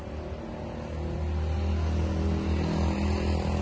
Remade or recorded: recorded